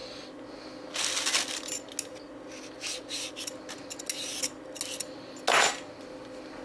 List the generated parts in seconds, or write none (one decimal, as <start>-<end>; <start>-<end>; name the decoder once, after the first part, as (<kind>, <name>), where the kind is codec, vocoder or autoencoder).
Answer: none